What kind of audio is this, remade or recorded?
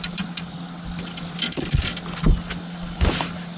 recorded